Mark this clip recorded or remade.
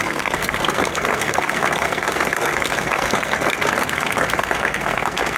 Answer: remade